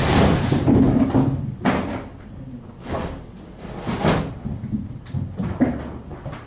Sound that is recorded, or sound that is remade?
recorded